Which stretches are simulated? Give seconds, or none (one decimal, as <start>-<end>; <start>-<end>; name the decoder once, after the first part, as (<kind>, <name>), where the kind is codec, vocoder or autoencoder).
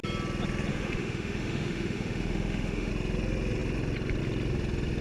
0.7-2.9 (autoencoder, DAC-VAE)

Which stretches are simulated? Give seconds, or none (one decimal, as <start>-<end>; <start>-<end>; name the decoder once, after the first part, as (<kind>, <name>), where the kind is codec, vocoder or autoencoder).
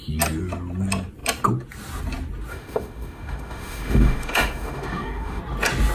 2.5-5.4 (autoencoder, DAC-VAE)